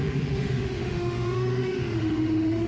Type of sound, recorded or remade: remade